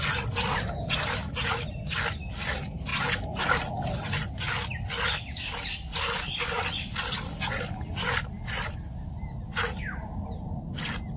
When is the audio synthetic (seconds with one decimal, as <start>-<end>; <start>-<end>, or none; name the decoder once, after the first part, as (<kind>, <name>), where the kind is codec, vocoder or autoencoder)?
none